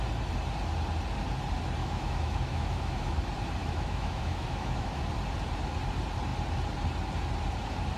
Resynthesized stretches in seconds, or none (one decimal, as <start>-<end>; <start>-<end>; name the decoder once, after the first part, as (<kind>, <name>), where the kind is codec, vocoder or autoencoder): 1.8-3.2 (autoencoder, DAC-VAE); 3.6-5.0